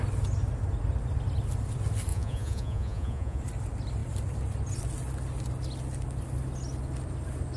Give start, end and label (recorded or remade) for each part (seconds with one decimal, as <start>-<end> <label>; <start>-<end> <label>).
0.0-2.1 recorded; 2.1-3.4 remade; 3.4-7.6 recorded